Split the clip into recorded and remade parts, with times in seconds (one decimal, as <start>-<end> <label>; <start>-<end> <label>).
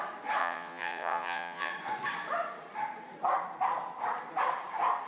0.0-0.4 recorded; 0.4-1.7 remade; 1.7-5.1 recorded